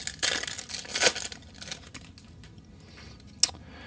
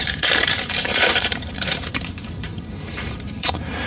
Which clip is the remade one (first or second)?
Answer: second